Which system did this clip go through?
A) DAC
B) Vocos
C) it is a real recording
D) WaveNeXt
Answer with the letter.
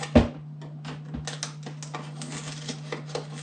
C